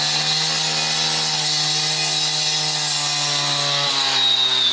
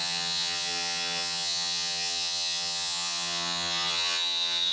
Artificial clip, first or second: second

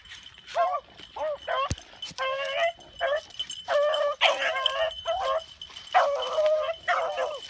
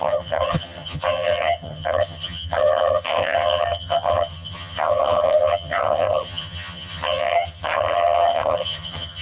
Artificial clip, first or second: second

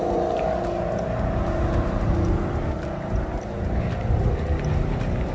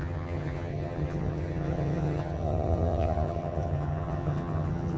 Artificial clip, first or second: second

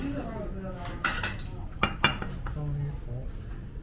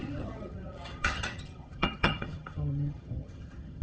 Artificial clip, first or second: second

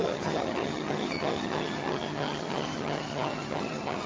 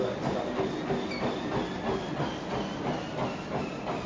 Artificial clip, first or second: first